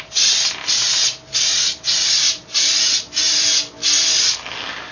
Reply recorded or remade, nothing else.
recorded